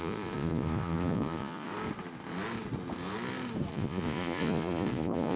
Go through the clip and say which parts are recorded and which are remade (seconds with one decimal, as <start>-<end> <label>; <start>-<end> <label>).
0.0-1.7 remade; 1.7-3.7 recorded; 3.7-5.4 remade

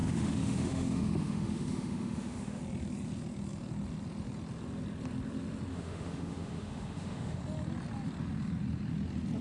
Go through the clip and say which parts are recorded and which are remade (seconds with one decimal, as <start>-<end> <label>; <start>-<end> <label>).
0.0-2.6 remade; 2.6-5.7 recorded; 5.7-7.4 remade; 7.4-9.4 recorded

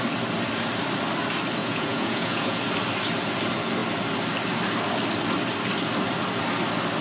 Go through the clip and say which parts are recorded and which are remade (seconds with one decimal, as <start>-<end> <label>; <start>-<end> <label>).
0.0-1.6 recorded; 1.6-2.6 remade; 2.6-7.0 recorded